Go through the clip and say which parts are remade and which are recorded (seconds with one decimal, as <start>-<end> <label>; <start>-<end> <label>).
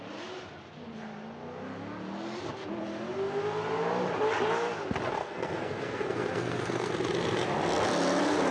0.0-5.2 recorded; 5.2-6.9 remade; 6.9-8.5 recorded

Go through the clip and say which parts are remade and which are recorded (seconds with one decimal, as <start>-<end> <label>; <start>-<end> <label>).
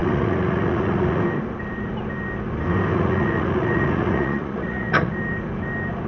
0.0-1.2 remade; 1.2-2.9 recorded; 2.9-5.1 remade; 5.1-6.1 recorded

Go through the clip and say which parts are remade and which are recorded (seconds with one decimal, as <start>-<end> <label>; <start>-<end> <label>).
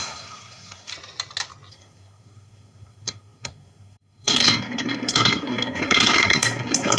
0.0-0.9 remade; 0.9-1.7 recorded; 1.7-7.0 remade